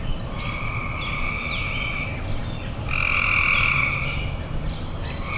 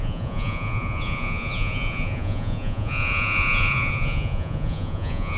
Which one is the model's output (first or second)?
second